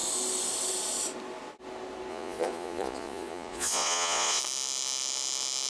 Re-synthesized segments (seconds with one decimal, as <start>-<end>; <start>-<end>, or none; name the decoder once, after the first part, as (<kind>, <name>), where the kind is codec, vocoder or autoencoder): 2.1-4.4 (vocoder, Vocos)